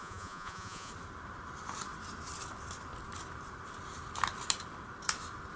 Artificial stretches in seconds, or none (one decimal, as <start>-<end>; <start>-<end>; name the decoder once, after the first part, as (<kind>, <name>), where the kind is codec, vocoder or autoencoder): 0.0-0.9 (vocoder, Vocos)